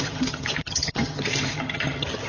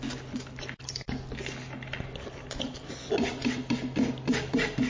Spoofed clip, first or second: first